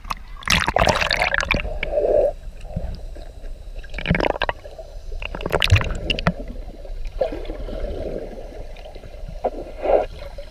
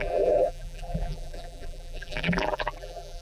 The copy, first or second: second